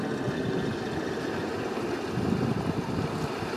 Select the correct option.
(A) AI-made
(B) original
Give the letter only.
B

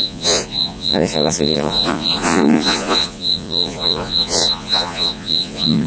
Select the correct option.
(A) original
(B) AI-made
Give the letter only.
B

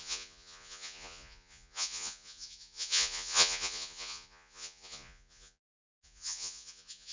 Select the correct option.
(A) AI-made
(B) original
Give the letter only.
A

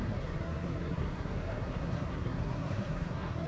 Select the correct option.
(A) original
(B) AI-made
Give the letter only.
B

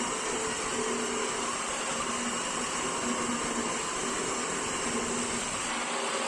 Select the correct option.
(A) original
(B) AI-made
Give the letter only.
A